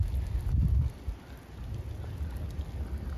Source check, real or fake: real